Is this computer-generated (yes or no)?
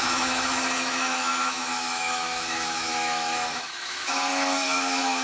yes